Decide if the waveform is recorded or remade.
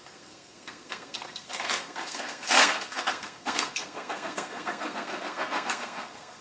remade